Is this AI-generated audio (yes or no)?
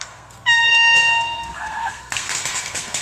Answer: yes